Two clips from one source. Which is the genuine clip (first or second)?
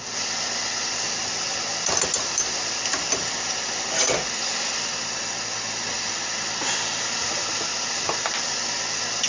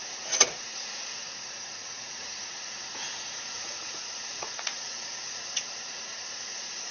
first